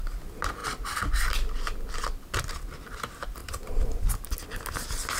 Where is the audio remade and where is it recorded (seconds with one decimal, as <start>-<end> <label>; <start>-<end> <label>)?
0.0-3.4 recorded; 3.4-4.2 remade; 4.2-5.2 recorded